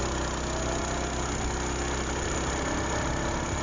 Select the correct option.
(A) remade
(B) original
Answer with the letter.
B